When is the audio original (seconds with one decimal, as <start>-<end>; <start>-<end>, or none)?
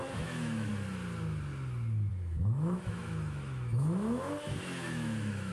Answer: 0.7-2.1